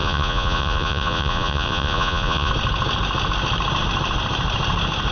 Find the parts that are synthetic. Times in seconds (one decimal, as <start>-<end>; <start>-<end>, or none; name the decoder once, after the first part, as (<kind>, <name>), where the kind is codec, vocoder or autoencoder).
0.0-2.5 (vocoder, Vocos)